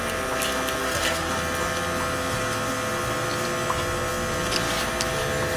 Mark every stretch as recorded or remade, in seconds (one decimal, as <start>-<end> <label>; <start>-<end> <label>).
0.0-0.8 recorded; 0.8-1.3 remade; 1.3-5.6 recorded

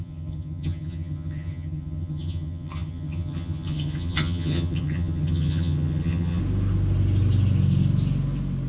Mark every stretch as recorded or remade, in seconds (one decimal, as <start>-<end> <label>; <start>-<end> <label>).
0.0-6.4 remade; 6.4-8.7 recorded

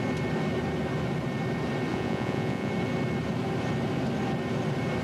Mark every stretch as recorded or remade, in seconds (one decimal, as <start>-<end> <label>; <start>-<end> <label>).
0.0-1.9 recorded; 1.9-2.7 remade; 2.7-5.0 recorded

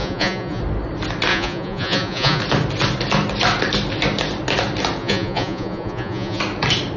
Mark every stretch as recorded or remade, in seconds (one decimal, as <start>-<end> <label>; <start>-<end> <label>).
0.0-0.6 remade; 0.6-1.3 recorded; 1.3-2.4 remade; 2.4-5.0 recorded; 5.0-6.4 remade; 6.4-7.0 recorded